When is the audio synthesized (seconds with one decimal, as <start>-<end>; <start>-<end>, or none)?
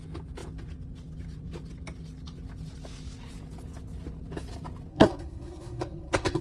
4.9-6.4